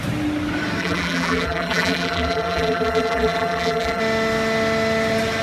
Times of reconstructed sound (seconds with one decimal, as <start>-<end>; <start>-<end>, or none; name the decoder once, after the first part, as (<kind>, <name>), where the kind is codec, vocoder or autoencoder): 0.8-4.0 (vocoder, BigVGAN v2)